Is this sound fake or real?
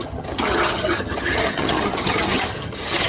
fake